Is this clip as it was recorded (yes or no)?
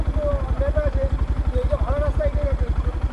yes